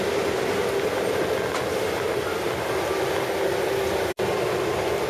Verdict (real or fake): real